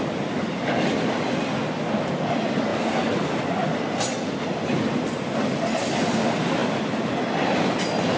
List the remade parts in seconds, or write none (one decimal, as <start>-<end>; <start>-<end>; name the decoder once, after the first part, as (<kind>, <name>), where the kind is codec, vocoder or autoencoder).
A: none